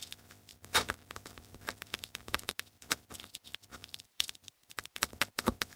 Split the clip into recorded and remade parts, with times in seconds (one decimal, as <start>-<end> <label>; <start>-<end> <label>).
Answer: 0.0-0.5 recorded; 0.5-2.5 remade; 2.5-3.7 recorded; 3.7-5.1 remade; 5.1-5.8 recorded